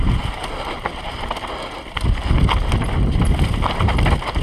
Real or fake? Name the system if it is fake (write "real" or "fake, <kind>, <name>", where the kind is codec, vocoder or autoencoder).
real